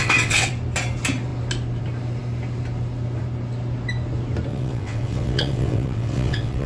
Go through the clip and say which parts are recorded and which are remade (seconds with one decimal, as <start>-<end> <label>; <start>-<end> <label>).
0.0-0.5 remade; 0.5-4.5 recorded; 4.5-6.7 remade